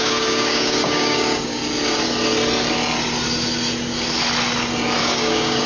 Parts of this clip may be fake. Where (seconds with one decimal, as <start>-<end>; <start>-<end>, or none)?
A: 0.0-1.6; 5.0-5.7